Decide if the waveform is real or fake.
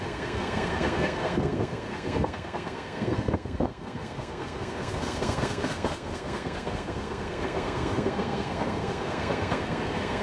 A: fake